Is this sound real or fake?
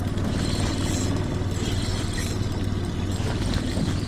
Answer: real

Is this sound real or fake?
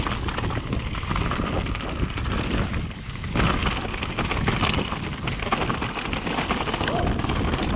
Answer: real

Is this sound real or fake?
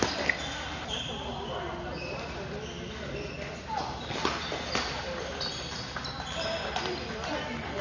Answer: real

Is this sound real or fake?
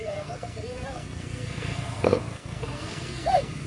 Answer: fake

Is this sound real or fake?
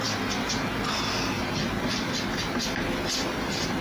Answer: real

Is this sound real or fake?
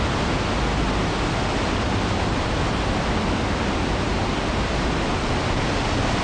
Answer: real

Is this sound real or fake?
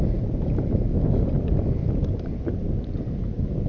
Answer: real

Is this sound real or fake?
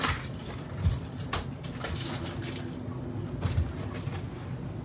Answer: real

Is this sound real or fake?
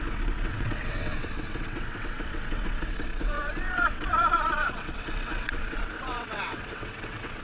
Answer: fake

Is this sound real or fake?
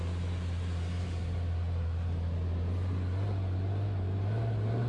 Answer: real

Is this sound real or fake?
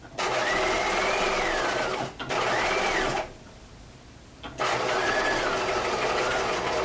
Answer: real